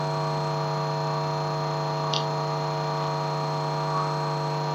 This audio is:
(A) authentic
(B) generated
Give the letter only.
A